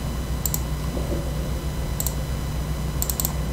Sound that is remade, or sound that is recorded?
recorded